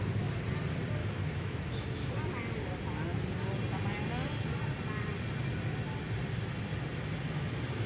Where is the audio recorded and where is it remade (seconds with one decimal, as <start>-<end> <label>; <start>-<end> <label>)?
0.0-1.0 recorded; 1.0-2.1 remade; 2.1-7.9 recorded